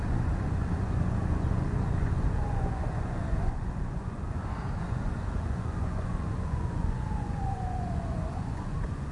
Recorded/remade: remade